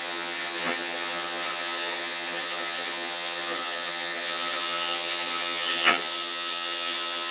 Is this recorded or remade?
remade